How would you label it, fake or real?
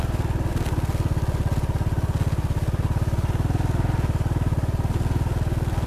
real